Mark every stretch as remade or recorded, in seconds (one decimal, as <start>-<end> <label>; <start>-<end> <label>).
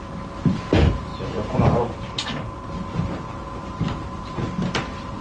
0.0-5.2 recorded